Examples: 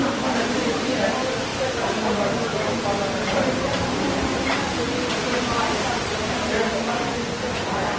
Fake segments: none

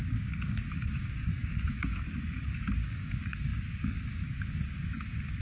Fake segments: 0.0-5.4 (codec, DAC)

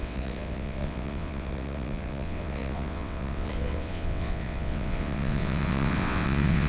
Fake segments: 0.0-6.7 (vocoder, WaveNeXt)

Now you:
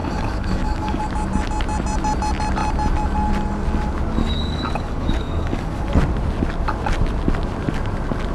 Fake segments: 0.0-1.0 (codec, DAC); 4.2-5.8

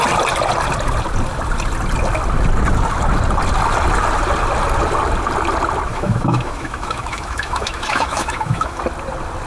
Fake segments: 5.9-8.8 (autoencoder, DAC-VAE)

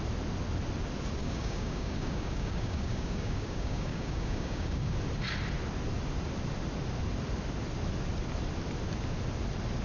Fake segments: 1.2-5.0 (codec, DAC)